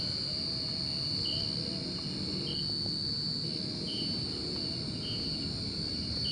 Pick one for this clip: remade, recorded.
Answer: recorded